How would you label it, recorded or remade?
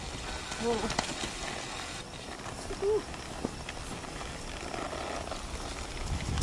recorded